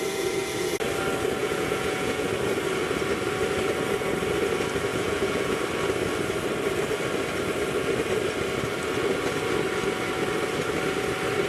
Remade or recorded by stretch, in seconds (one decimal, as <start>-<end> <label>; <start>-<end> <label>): 0.0-1.4 recorded; 1.4-2.3 remade; 2.3-4.9 recorded; 4.9-5.6 remade; 5.6-11.5 recorded